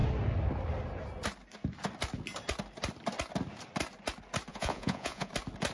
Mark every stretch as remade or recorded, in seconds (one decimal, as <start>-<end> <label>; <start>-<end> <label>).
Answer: 0.0-4.5 recorded; 4.5-5.3 remade; 5.3-5.7 recorded